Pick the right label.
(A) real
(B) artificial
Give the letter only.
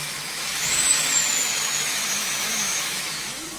B